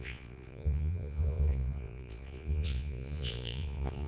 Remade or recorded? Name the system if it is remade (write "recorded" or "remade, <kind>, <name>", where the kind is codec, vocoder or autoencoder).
remade, vocoder, Vocos